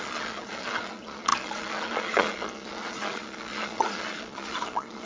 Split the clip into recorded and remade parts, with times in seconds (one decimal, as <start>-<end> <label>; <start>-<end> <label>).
0.0-5.1 remade